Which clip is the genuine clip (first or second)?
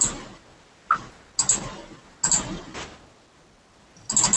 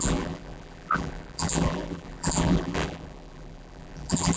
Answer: first